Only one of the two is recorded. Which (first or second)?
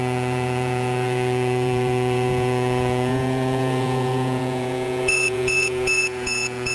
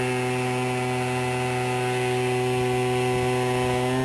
second